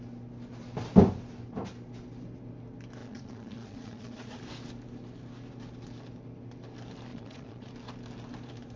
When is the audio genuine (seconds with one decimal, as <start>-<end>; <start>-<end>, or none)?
0.0-3.0; 4.4-7.1; 7.7-8.8